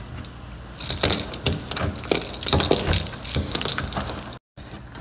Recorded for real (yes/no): yes